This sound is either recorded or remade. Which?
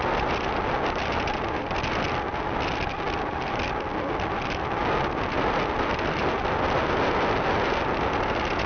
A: recorded